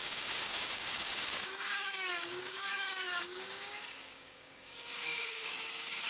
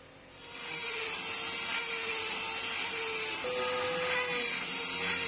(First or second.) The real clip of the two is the second